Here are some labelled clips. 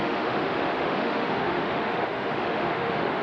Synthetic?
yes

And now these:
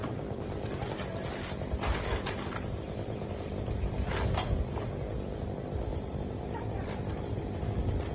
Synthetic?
no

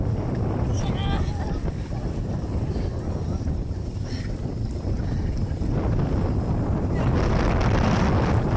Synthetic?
no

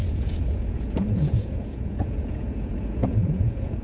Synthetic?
yes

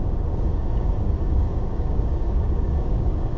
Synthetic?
yes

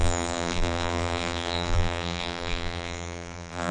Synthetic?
yes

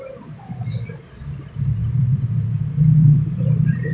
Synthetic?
yes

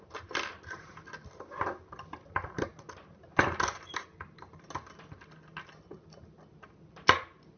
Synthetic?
no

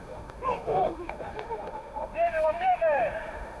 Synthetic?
yes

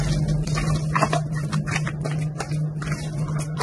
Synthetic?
no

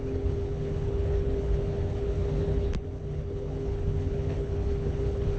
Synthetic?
yes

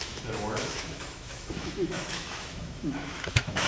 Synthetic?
yes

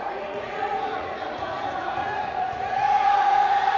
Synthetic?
yes